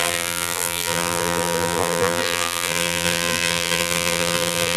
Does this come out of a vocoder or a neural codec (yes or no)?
yes